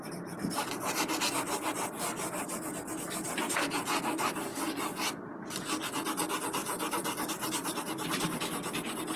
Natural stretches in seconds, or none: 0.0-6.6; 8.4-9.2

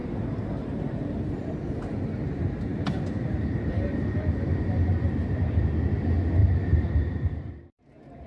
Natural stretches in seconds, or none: 1.5-2.7; 4.9-6.4; 7.5-8.3